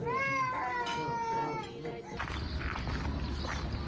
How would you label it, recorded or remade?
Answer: recorded